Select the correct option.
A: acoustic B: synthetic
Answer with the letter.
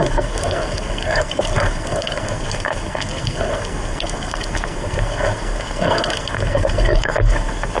B